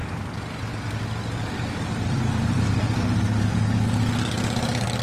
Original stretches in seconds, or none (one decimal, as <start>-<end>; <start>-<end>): 0.7-1.4; 3.4-5.0